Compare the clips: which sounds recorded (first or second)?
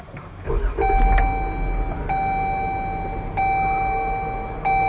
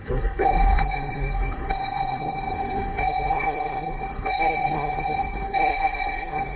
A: first